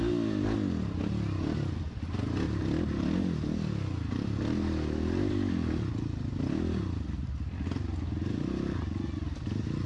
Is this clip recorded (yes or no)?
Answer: yes